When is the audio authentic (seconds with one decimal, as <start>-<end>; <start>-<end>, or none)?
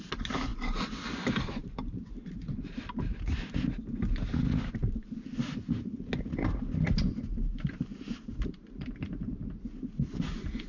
0.0-7.9; 9.5-10.7